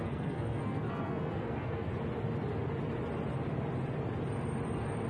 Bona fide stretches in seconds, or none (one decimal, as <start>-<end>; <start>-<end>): 1.9-5.1